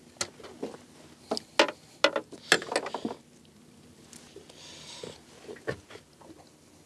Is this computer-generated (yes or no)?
no